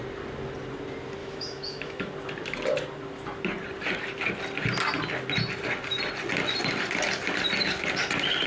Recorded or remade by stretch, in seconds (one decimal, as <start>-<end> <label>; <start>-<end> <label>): 0.0-1.2 recorded; 1.2-2.1 remade; 2.1-8.5 recorded